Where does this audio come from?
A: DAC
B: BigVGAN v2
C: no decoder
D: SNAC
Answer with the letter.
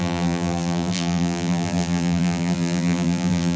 B